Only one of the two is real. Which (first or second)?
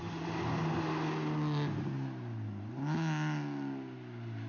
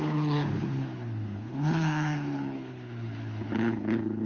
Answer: first